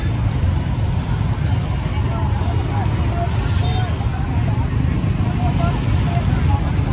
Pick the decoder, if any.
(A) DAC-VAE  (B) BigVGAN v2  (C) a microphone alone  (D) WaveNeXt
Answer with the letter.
C